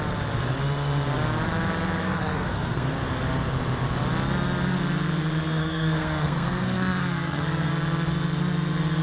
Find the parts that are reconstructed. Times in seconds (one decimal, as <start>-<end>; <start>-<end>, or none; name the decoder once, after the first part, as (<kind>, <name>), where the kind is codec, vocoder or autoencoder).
2.0-2.9 (codec, SNAC); 5.6-7.7

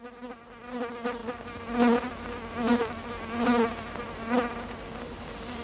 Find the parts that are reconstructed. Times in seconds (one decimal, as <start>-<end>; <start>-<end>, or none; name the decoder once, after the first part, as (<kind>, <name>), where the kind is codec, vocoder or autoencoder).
0.0-1.2 (vocoder, BigVGAN v2); 4.0-5.6

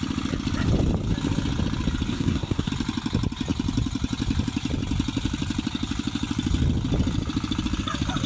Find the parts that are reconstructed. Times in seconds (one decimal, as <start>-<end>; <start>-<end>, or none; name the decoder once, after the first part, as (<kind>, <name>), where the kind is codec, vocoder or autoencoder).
2.1-2.7 (codec, SNAC)

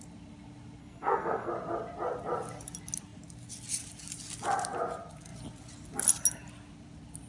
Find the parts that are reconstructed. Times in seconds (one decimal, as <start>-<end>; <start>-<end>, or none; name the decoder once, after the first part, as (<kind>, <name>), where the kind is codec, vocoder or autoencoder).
0.8-1.5 (codec, SNAC)

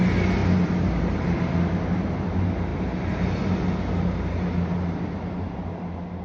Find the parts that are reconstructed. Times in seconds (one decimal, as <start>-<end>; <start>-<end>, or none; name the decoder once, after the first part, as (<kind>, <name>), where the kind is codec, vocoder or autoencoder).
none

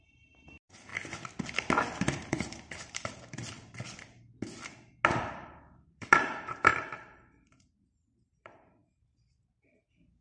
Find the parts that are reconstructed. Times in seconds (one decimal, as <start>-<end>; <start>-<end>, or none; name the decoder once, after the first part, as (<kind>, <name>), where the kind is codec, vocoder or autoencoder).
0.0-0.9 (vocoder, BigVGAN v2); 2.0-3.4; 5.1-10.2